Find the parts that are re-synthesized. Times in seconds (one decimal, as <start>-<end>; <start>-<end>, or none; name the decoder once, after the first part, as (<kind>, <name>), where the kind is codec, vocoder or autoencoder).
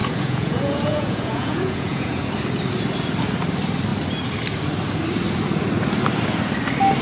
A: 0.0-2.2 (vocoder, Vocos)